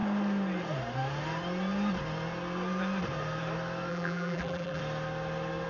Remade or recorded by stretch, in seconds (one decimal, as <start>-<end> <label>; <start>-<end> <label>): 0.0-3.9 recorded; 3.9-4.8 remade; 4.8-5.7 recorded